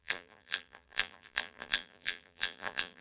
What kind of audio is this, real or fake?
fake